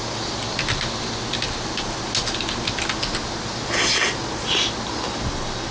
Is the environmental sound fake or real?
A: real